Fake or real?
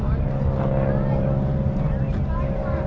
real